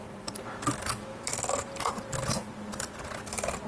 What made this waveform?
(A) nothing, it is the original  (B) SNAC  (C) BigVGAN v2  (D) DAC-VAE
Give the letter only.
A